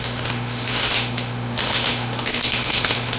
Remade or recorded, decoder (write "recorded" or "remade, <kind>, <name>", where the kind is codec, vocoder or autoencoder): remade, autoencoder, DAC-VAE